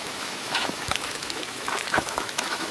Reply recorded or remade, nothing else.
remade